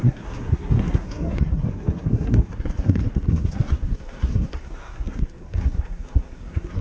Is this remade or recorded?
remade